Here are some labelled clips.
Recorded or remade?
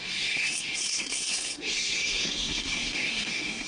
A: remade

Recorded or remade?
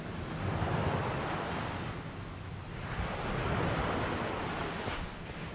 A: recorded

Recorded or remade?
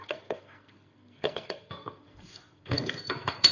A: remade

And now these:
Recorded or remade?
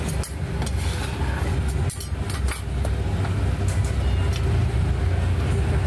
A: recorded